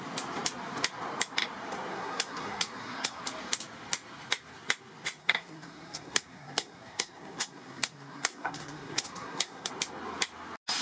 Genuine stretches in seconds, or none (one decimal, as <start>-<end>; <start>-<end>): 0.0-1.9; 3.2-5.2; 9.7-10.8